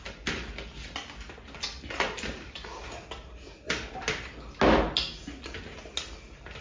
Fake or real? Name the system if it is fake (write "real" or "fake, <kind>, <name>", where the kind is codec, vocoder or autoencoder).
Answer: real